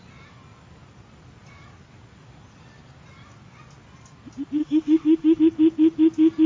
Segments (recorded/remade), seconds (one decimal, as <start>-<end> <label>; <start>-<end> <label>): 0.0-4.6 recorded; 4.6-5.4 remade; 5.4-6.5 recorded